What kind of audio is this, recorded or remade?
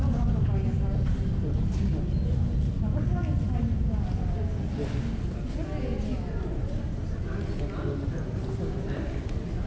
recorded